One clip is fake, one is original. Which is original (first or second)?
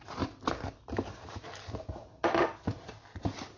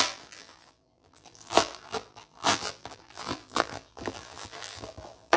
first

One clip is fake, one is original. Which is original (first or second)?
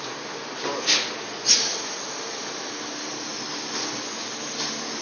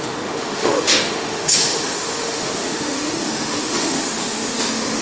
first